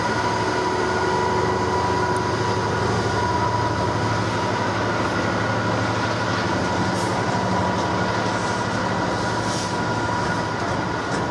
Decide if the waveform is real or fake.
real